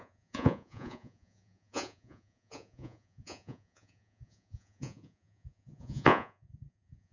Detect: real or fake fake